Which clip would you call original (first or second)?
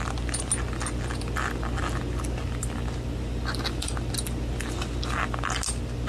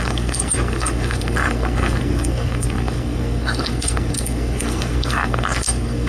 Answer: first